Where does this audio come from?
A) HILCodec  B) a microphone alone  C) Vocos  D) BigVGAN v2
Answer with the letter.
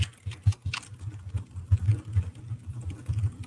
B